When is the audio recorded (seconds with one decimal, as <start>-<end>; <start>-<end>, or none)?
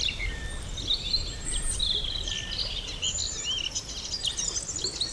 0.0-5.1